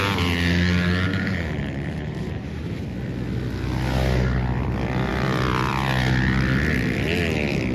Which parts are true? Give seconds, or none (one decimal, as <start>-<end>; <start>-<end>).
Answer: 0.0-1.1; 2.7-7.7